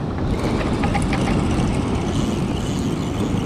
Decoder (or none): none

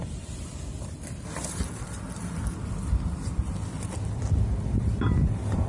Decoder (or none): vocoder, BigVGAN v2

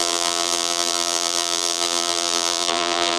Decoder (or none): vocoder, BigVGAN v2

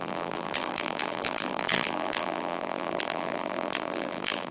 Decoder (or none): vocoder, BigVGAN v2